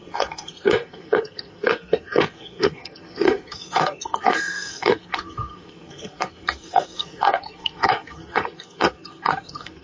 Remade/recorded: remade